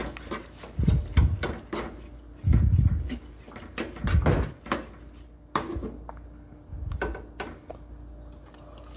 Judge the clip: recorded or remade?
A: recorded